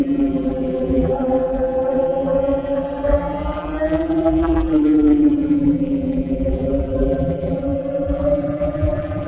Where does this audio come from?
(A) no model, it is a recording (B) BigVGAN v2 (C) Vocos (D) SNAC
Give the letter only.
B